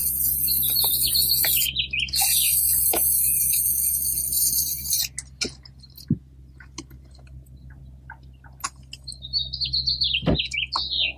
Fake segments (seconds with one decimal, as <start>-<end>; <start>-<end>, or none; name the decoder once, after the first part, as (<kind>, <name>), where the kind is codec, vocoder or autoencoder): none